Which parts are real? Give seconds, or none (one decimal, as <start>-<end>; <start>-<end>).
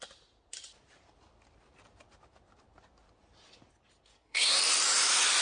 0.0-4.1; 4.6-5.4